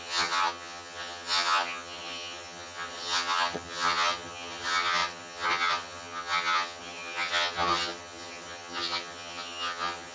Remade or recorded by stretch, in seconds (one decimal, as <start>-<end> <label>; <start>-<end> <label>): 0.0-10.1 remade